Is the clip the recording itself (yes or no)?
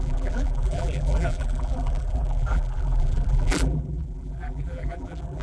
no